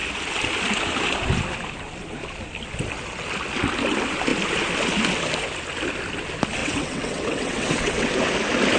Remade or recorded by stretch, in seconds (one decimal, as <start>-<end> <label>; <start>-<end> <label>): 0.0-6.6 recorded; 6.6-8.1 remade; 8.1-8.8 recorded